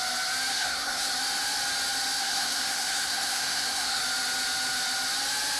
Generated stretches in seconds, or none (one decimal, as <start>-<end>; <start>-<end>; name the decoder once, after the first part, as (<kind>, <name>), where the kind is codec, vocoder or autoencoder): 0.5-1.1 (codec, SNAC); 2.2-4.0